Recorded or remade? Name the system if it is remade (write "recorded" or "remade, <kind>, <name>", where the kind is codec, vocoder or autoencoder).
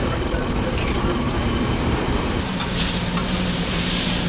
remade, vocoder, BigVGAN v2